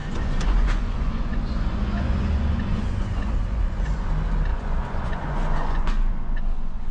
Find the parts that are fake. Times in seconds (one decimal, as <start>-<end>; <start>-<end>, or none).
0.0-4.1; 4.5-6.9